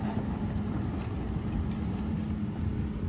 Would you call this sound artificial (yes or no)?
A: no